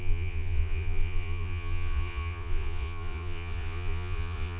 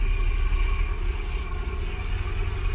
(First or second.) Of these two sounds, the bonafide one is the second